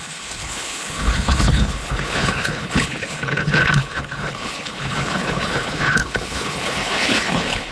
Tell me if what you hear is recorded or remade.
remade